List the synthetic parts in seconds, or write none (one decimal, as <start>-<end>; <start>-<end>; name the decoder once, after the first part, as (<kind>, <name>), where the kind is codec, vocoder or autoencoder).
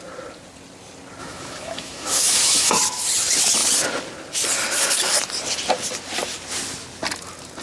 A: 1.2-2.7 (autoencoder, DAC-VAE)